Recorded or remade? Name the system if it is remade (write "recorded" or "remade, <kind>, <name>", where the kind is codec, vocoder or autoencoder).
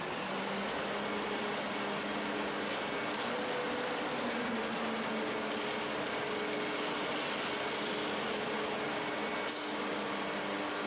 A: recorded